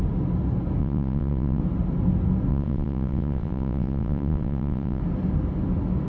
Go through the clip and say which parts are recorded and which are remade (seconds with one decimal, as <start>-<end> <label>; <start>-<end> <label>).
0.0-0.8 recorded; 0.8-1.6 remade; 1.6-2.5 recorded; 2.5-5.0 remade; 5.0-6.1 recorded